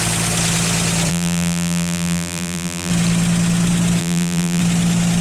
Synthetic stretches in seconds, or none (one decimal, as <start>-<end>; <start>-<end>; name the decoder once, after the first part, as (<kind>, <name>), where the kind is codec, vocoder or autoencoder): 1.1-2.9 (vocoder, BigVGAN v2); 4.0-4.6